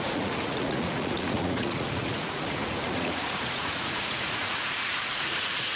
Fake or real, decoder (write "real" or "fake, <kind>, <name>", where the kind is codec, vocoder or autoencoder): fake, vocoder, Vocos